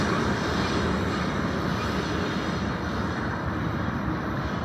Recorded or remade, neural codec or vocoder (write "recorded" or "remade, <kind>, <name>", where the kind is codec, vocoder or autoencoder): recorded